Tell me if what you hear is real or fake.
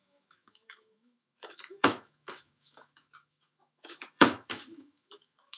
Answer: fake